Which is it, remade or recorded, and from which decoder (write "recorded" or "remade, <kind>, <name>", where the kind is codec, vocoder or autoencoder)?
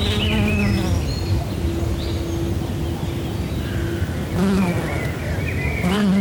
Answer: recorded